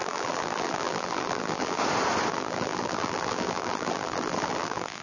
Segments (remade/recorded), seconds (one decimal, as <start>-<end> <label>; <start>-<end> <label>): 0.0-1.8 remade; 1.8-2.3 recorded; 2.3-5.0 remade